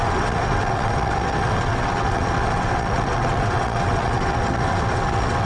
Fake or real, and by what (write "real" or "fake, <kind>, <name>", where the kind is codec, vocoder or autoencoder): fake, vocoder, WaveNeXt